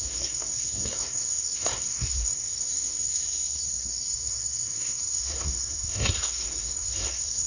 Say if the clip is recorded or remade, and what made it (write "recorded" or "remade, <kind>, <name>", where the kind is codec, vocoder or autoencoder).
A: remade, codec, SNAC